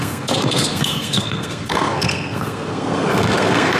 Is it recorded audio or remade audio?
remade